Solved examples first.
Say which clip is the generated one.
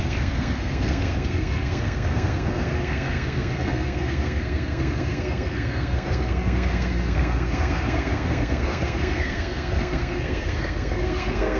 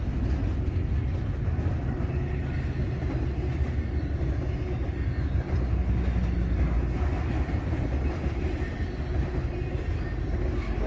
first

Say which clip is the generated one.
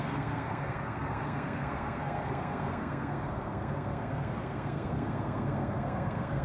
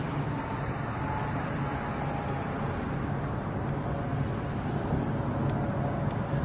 first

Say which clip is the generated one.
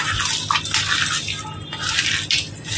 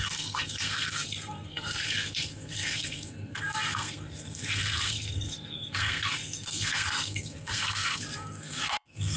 second